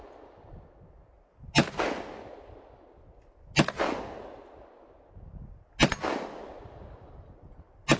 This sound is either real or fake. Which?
real